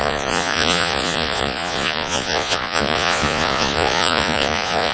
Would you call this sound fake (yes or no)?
yes